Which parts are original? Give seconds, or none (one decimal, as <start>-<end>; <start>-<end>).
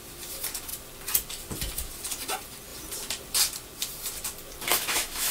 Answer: 0.0-4.7